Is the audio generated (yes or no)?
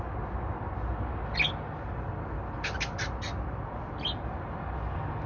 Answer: no